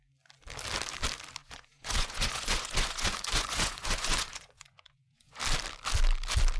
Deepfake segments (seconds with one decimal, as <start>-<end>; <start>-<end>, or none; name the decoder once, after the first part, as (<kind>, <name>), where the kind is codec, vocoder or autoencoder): 1.4-5.4 (vocoder, Vocos)